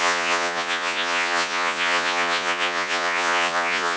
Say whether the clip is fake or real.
fake